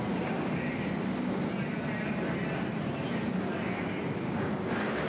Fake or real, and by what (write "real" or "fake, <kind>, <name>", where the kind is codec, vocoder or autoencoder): real